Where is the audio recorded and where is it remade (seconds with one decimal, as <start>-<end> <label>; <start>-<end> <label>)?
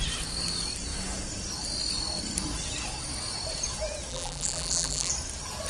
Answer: 0.0-4.1 recorded; 4.1-5.1 remade; 5.1-5.7 recorded